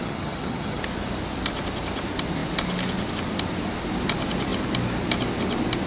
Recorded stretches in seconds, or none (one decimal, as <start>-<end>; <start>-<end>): 0.8-5.9